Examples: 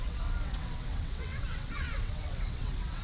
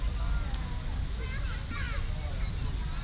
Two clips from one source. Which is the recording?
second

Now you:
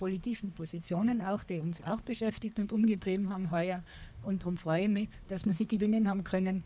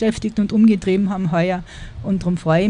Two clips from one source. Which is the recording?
second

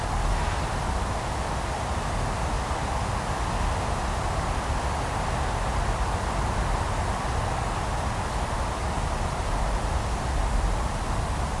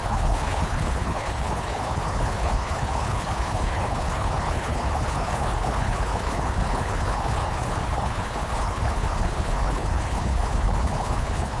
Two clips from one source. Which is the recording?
first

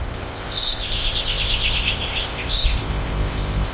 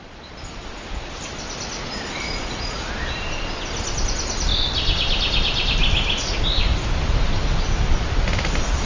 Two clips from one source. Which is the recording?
second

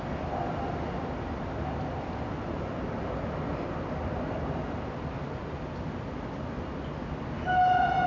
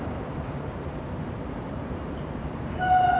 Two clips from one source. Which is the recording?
first